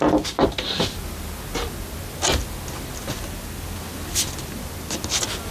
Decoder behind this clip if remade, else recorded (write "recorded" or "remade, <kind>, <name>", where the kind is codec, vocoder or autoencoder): recorded